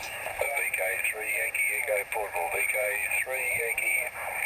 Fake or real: fake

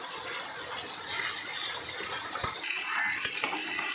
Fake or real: real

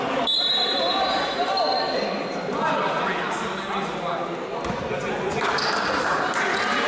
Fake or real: real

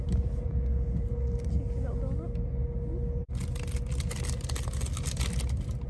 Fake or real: real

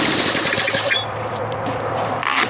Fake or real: fake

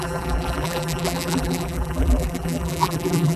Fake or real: fake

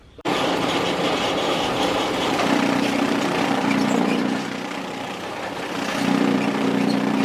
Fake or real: fake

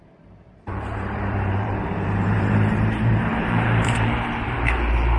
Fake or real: fake